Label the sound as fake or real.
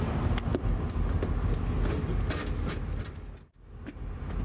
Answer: real